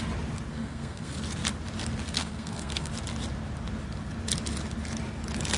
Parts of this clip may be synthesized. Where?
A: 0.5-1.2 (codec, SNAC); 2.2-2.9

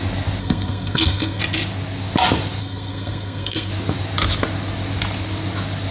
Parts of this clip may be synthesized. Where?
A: 0.4-1.4 (codec, SNAC); 2.6-3.7

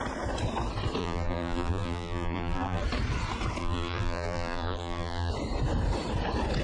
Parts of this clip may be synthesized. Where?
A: 1.0-2.8 (vocoder, BigVGAN v2); 3.6-5.3

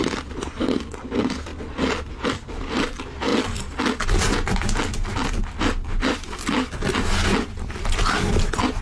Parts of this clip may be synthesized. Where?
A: none